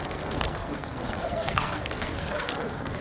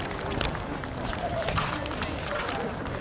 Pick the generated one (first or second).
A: first